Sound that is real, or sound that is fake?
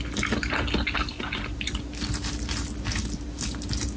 real